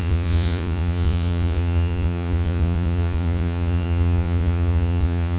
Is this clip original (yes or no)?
no